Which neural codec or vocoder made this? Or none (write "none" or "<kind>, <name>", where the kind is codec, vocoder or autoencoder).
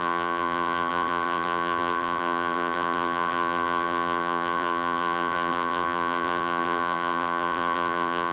vocoder, BigVGAN v2